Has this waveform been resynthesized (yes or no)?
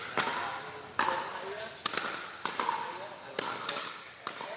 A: no